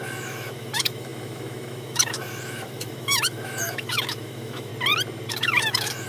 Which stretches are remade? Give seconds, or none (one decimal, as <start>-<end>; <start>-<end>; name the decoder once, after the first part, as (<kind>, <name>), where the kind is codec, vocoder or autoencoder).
0.0-4.7 (autoencoder, DAC-VAE); 5.3-6.1